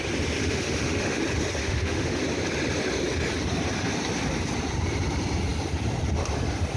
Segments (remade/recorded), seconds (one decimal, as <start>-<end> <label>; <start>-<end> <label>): 0.0-0.4 recorded; 0.4-1.2 remade; 1.2-1.6 recorded; 1.6-2.2 remade; 2.2-6.8 recorded